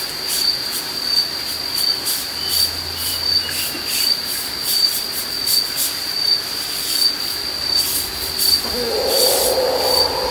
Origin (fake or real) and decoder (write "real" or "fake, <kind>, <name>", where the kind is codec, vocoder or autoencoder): real